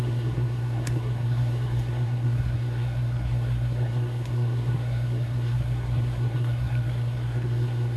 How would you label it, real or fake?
fake